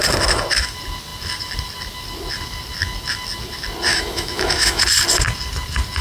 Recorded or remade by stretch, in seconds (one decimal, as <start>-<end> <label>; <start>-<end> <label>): 0.0-3.9 recorded; 3.9-4.8 remade; 4.8-6.0 recorded